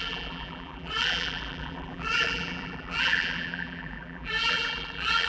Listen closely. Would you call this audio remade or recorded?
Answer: remade